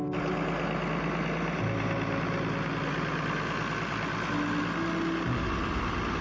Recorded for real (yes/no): yes